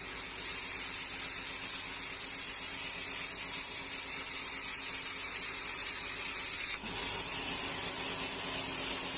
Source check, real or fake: real